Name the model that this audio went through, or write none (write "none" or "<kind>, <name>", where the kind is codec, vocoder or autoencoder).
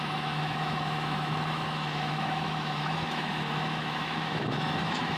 autoencoder, DAC-VAE